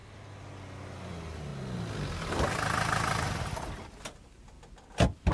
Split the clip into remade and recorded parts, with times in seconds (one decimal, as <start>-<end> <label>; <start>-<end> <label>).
0.0-5.3 recorded